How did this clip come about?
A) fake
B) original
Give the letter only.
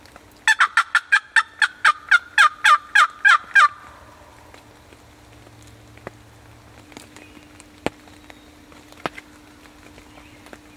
B